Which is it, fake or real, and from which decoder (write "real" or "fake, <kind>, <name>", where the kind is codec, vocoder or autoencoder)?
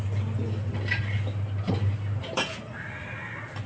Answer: fake, vocoder, BigVGAN v2